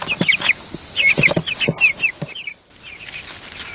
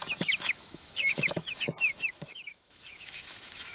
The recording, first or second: first